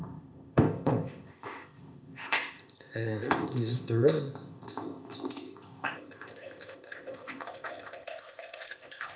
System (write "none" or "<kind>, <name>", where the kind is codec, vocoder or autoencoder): codec, ZipCodec